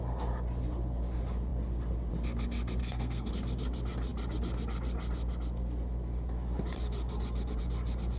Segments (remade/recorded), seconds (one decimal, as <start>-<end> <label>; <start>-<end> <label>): 0.0-2.8 recorded; 2.8-3.3 remade; 3.3-8.2 recorded